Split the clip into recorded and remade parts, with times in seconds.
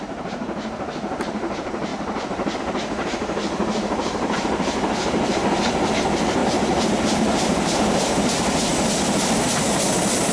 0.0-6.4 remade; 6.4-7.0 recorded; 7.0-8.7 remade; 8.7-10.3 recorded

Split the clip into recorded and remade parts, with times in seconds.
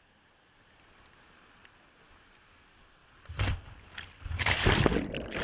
0.0-3.0 recorded; 3.0-3.8 remade; 3.8-5.4 recorded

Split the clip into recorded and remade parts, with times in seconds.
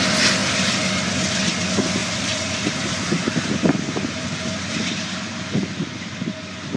0.0-2.0 recorded; 2.0-5.9 remade; 5.9-6.8 recorded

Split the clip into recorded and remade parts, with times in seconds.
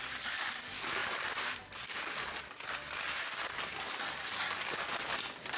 0.0-1.0 recorded; 1.0-4.4 remade; 4.4-5.6 recorded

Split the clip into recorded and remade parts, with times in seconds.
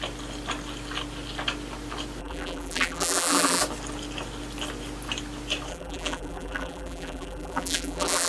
0.0-2.2 recorded; 2.2-3.6 remade; 3.6-5.7 recorded; 5.7-8.3 remade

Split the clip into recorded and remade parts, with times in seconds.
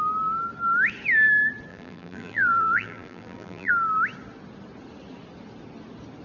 0.0-1.7 recorded; 1.7-3.7 remade; 3.7-6.2 recorded